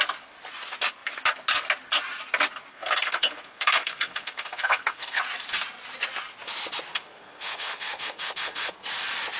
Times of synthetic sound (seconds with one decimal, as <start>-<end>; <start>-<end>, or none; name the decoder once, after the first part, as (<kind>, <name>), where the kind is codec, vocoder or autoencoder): 2.7-5.2 (codec, SNAC); 6.9-8.7